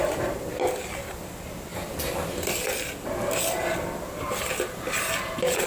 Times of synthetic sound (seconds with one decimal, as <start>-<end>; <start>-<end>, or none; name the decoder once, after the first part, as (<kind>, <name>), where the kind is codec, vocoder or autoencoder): none